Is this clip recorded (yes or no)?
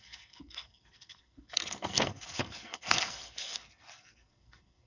no